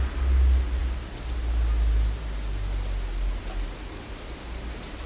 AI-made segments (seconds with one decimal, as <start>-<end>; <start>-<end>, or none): none